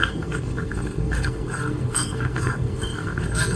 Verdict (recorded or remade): remade